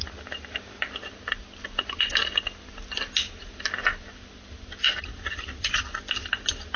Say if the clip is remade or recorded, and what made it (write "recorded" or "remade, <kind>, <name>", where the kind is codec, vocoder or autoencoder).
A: recorded